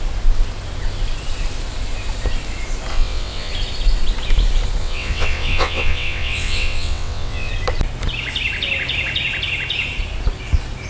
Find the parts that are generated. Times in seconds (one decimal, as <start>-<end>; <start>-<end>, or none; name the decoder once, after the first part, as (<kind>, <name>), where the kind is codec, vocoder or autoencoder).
2.9-3.5 (vocoder, WaveNeXt); 4.8-7.5

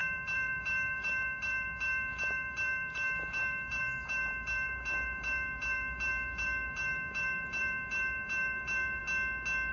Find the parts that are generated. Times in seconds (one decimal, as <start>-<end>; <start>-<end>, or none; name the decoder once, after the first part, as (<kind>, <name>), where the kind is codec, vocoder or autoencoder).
0.0-9.0 (vocoder, BigVGAN v2)

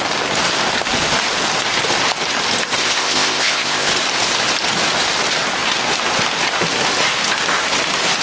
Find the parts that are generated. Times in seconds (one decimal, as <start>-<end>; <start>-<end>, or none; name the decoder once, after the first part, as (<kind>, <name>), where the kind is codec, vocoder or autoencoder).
2.8-3.9 (codec, ZipCodec)

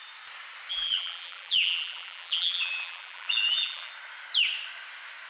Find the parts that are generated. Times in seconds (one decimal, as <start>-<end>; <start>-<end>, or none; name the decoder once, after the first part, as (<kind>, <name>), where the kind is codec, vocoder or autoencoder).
0.7-3.9 (vocoder, BigVGAN v2)

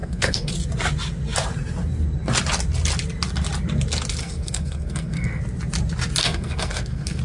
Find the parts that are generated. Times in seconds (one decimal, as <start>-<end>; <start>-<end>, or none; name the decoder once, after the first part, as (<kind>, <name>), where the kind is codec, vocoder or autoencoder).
0.0-0.5 (codec, SNAC); 4.2-5.4; 6.2-7.2

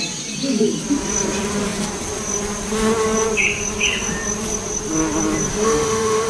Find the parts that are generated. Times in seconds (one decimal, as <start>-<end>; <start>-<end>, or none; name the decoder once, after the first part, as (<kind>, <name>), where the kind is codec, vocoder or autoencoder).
5.5-6.3 (autoencoder, DAC-VAE)

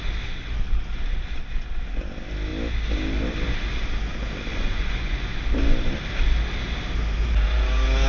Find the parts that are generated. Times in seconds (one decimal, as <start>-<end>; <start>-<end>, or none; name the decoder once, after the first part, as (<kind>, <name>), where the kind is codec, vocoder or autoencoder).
4.5-5.3 (vocoder, Vocos)